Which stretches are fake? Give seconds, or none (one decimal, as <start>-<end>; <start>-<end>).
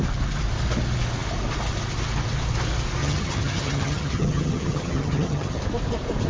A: 3.0-5.6